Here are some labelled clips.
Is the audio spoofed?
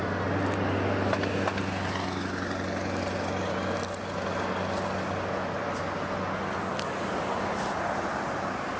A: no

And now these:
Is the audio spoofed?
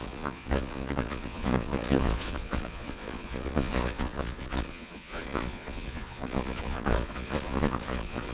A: yes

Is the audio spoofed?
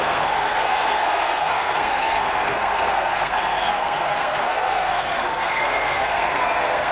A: yes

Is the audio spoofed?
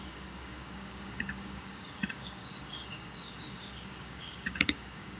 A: yes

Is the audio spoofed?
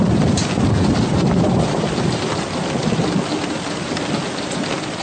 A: no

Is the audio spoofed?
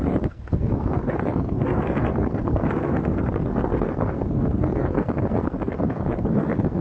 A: yes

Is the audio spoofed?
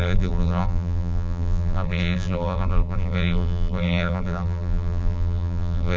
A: yes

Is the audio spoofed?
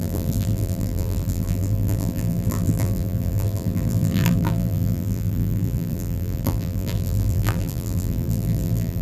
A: yes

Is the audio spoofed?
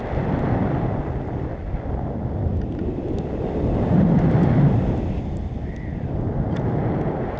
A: no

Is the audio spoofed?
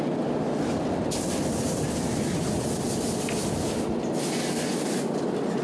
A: no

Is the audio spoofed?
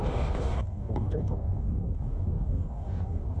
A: yes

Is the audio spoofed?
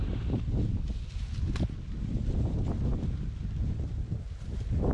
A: no